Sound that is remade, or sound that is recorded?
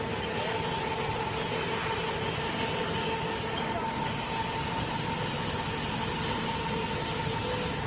recorded